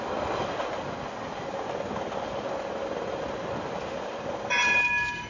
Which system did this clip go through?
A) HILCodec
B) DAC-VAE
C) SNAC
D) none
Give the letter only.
D